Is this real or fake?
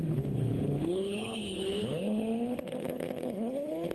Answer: fake